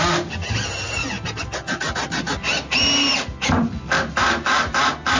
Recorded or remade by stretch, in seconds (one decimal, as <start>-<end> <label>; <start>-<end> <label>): 0.0-5.2 recorded